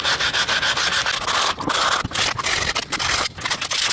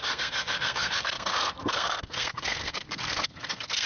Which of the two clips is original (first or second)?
first